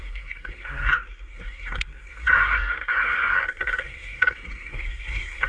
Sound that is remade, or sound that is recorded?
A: remade